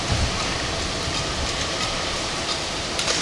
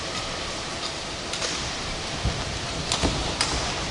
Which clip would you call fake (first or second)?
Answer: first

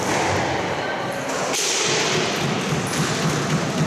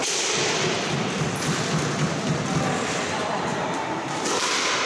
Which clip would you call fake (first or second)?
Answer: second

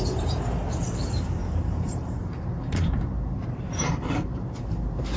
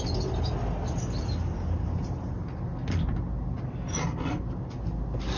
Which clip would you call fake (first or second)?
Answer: first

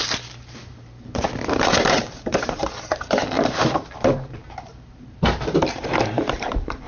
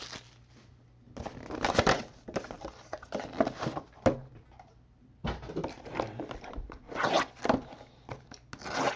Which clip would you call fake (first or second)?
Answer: first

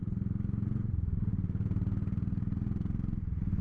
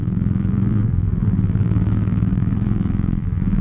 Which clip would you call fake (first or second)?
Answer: second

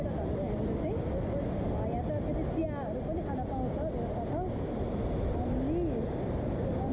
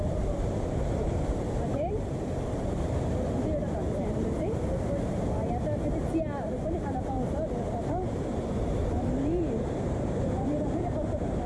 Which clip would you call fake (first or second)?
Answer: second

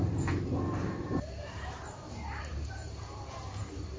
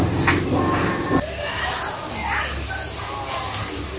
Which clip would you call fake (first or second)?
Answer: first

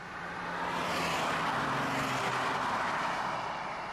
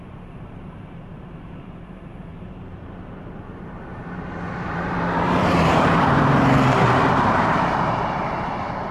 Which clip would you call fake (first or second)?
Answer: second